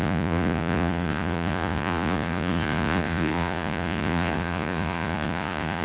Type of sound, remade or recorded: remade